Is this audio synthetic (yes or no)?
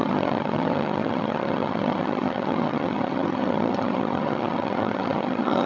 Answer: yes